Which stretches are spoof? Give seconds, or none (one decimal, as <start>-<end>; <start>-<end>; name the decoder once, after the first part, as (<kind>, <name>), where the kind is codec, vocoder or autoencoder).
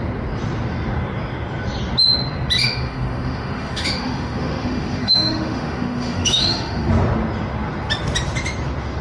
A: 2.6-6.9 (autoencoder, DAC-VAE)